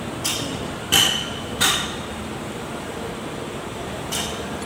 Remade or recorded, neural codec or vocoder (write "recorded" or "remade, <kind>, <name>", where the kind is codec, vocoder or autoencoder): remade, vocoder, BigVGAN v2